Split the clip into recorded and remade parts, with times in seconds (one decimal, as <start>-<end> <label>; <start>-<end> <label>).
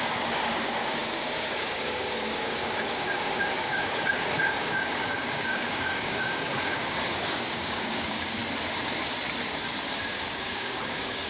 0.0-8.4 remade; 8.4-10.0 recorded; 10.0-11.3 remade